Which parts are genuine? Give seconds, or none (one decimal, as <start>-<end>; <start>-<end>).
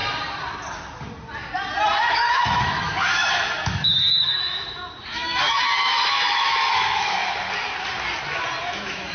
0.0-2.1; 7.2-8.7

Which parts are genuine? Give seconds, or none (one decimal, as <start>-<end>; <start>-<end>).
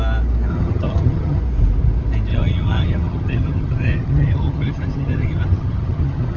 0.0-0.5; 1.4-2.3